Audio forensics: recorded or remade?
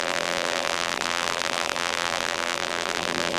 remade